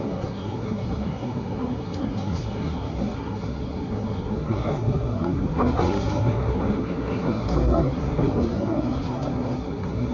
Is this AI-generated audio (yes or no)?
yes